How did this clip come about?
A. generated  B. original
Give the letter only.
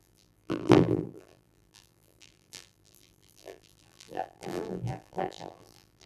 A